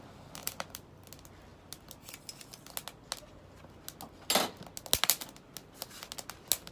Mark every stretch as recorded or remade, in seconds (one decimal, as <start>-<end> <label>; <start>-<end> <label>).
0.0-0.4 recorded; 0.4-1.0 remade; 1.0-6.7 recorded